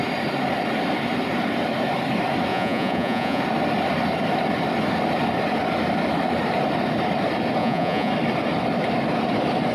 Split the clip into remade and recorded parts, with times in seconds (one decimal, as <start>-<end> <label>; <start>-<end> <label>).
0.0-2.5 recorded; 2.5-3.4 remade; 3.4-7.6 recorded; 7.6-8.1 remade; 8.1-9.7 recorded